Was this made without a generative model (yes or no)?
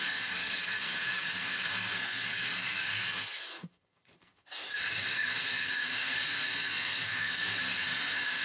no